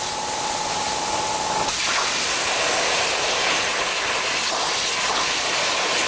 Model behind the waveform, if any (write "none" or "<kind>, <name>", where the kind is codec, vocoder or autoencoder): none